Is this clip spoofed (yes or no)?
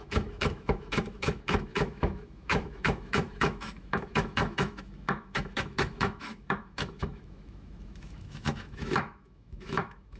yes